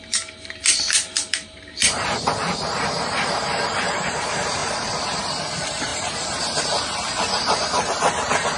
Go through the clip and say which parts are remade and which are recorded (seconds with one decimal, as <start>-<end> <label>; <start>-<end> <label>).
0.0-8.6 remade